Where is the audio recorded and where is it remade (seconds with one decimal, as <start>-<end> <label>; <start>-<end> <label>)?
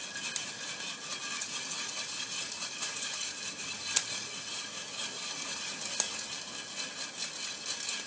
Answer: 0.0-1.4 recorded; 1.4-5.7 remade; 5.7-8.1 recorded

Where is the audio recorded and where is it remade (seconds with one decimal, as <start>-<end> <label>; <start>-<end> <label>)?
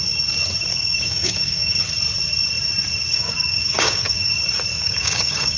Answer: 0.0-0.7 recorded; 0.7-1.9 remade; 1.9-3.1 recorded; 3.1-4.3 remade; 4.3-4.7 recorded; 4.7-5.6 remade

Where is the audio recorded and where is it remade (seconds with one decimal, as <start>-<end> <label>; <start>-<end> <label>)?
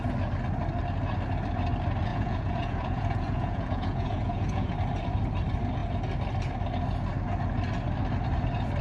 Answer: 0.0-2.1 recorded; 2.1-4.7 remade; 4.7-8.8 recorded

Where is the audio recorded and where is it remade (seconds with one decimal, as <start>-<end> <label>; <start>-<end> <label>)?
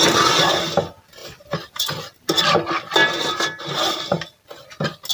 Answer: 0.0-5.1 recorded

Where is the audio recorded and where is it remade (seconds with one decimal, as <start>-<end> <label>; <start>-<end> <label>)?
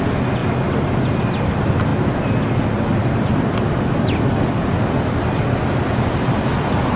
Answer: 0.0-7.0 recorded